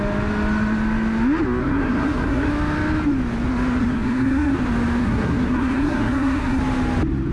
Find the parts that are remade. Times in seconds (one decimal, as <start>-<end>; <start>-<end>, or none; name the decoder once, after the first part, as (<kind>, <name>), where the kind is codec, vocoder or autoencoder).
1.6-2.5 (codec, SNAC); 3.8-4.6; 5.0-6.6